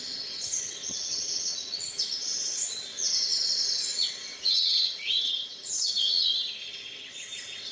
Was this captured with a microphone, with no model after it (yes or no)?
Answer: no